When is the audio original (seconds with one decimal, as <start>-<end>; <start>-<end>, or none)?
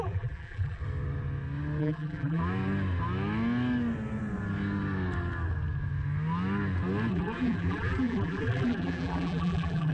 0.8-1.8; 2.4-7.1